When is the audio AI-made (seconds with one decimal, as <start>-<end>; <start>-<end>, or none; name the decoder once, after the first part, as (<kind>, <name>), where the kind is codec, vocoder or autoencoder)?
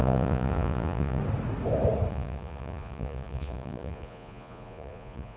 0.0-1.2 (vocoder, Vocos); 2.1-5.4